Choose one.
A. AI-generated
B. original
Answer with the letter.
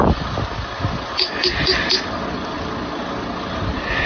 B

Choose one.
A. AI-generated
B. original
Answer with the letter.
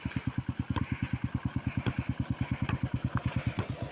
B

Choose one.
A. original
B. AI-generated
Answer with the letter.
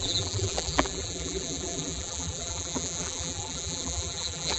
B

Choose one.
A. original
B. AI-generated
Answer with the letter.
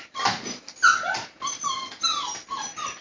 A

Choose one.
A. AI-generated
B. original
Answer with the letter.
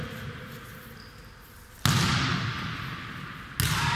B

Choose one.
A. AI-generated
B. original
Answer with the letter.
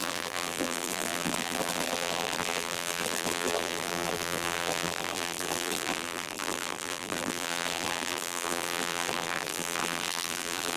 A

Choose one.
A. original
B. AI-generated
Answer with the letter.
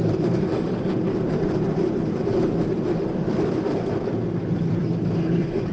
B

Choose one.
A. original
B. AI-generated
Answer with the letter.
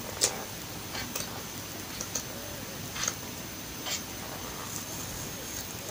A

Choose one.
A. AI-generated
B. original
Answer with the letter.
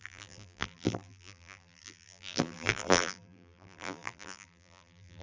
A